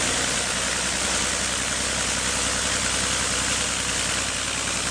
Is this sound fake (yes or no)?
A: no